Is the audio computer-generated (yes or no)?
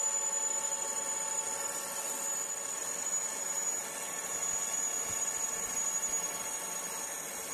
no